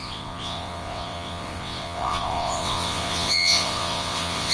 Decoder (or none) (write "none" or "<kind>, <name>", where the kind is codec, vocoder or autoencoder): vocoder, WaveNeXt